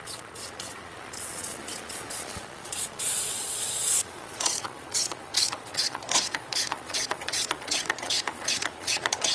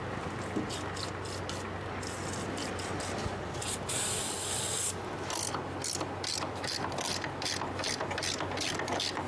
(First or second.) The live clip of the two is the second